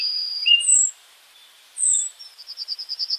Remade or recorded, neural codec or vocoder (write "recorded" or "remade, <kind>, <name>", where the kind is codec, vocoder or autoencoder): remade, vocoder, BigVGAN v2